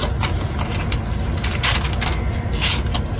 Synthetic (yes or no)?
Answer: no